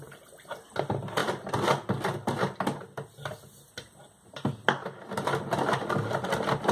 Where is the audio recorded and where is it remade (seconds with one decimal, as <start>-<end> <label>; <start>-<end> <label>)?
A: 0.0-4.8 recorded; 4.8-6.3 remade; 6.3-6.7 recorded